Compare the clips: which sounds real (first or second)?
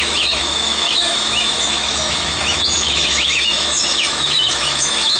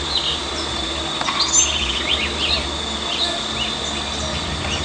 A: second